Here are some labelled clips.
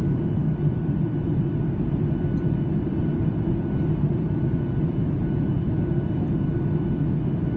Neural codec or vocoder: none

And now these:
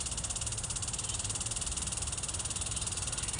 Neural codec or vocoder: none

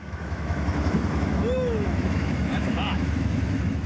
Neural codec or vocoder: autoencoder, DAC-VAE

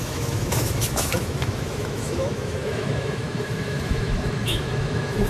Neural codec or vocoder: autoencoder, DAC-VAE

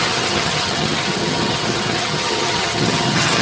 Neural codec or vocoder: vocoder, HiFi-GAN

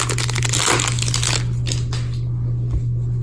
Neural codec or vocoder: none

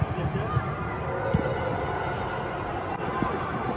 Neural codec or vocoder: none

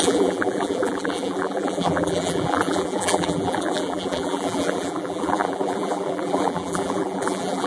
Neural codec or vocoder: vocoder, BigVGAN v2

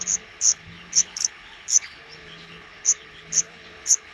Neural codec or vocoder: codec, HILCodec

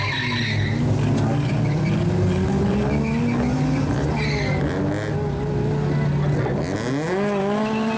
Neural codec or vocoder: none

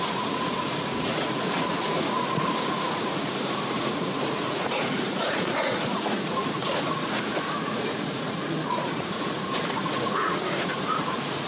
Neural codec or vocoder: vocoder, Vocos